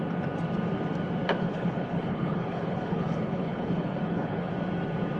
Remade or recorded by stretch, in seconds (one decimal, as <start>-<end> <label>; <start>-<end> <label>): 0.0-1.4 recorded; 1.4-4.5 remade; 4.5-5.2 recorded